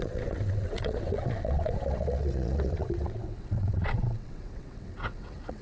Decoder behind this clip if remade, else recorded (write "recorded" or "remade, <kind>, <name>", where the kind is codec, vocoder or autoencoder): remade, vocoder, WaveNeXt